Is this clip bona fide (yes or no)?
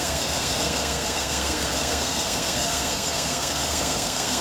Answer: no